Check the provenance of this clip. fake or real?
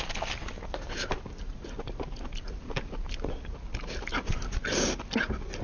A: real